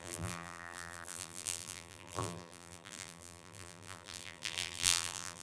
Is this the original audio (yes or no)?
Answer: no